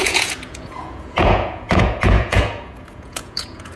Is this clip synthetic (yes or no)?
yes